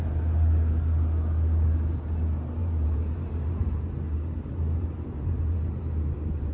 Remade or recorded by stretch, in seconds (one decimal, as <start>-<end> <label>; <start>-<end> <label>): 0.0-2.6 recorded; 2.6-6.5 remade

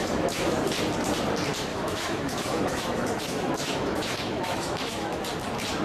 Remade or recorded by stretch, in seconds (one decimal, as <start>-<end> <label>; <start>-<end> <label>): 0.0-0.6 remade; 0.6-1.7 recorded; 1.7-5.2 remade; 5.2-5.8 recorded

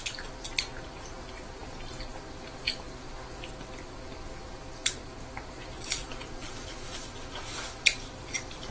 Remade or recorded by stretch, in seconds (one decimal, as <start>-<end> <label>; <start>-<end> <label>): 0.0-8.7 recorded